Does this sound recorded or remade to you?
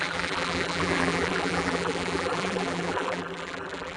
remade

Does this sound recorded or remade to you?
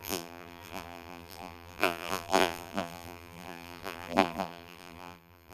remade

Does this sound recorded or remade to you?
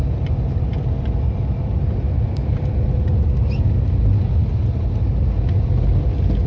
recorded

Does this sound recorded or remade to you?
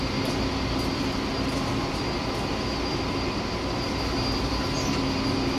recorded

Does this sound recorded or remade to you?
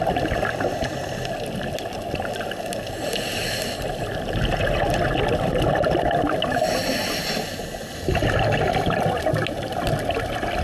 recorded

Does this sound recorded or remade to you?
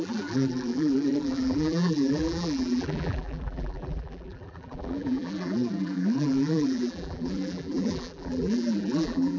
remade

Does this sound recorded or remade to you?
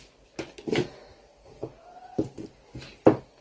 recorded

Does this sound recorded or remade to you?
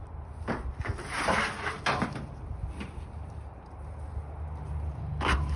recorded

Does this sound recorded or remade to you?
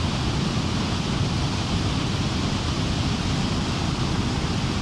recorded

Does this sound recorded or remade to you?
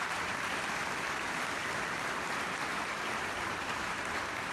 remade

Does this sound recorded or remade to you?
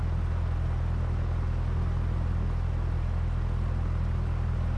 recorded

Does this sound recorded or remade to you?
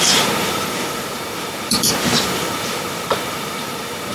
remade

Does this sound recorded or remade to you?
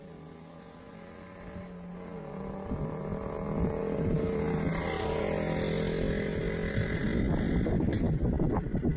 recorded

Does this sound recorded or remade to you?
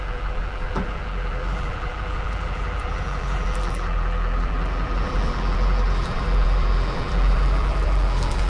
remade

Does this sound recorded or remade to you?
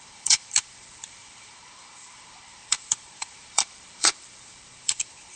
remade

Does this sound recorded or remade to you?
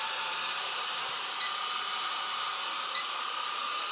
remade